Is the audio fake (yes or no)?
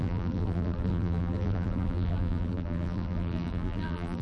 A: yes